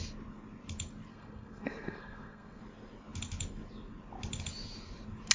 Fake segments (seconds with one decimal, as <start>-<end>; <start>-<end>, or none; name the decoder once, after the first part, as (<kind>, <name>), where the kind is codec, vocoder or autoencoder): 1.1-2.6 (codec, SNAC)